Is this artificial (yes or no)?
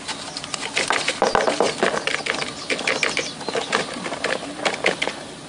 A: no